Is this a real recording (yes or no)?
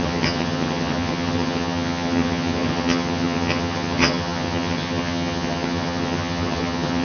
no